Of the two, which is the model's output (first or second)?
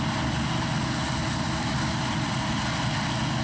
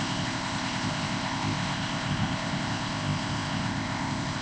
second